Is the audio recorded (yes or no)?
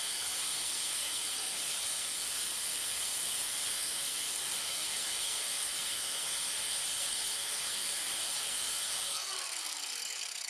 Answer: no